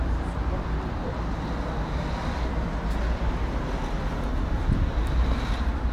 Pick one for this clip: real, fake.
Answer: real